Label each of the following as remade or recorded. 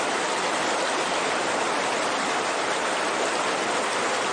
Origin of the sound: recorded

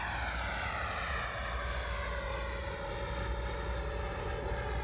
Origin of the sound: recorded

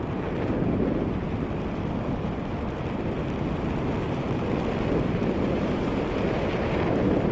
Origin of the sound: recorded